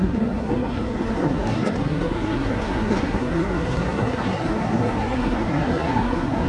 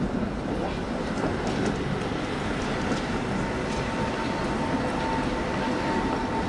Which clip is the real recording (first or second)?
second